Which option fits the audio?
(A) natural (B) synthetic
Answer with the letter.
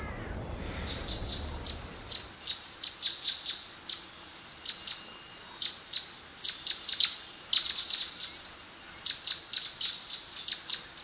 A